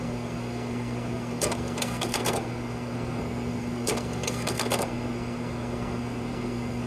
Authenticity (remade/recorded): remade